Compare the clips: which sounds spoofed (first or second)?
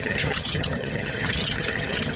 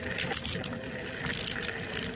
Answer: first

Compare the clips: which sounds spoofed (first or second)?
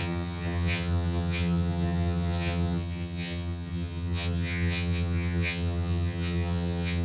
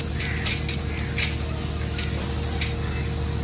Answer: first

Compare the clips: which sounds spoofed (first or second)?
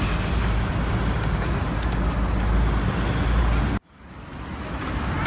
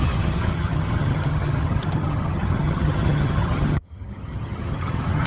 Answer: second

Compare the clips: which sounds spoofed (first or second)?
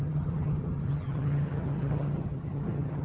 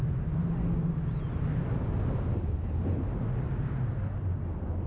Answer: first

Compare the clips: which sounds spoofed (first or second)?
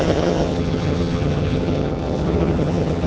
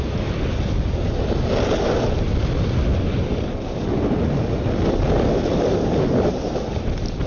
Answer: first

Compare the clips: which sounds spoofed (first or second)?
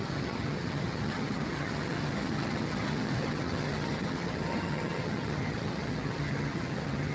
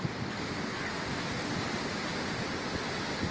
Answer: first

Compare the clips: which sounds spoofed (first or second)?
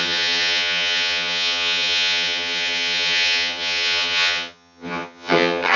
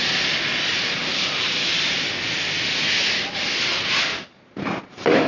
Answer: first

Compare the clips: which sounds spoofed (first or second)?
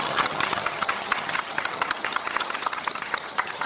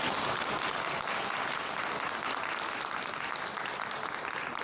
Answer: first